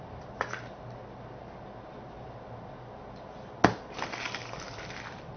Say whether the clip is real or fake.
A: real